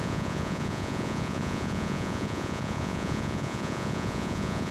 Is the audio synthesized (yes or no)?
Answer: yes